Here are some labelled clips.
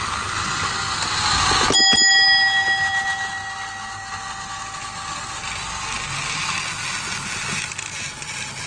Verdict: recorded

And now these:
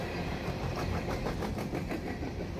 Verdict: recorded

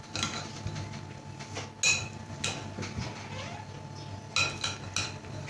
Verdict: recorded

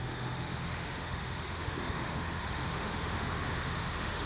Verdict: remade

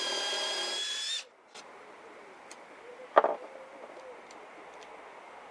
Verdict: recorded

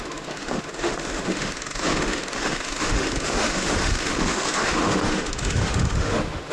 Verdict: remade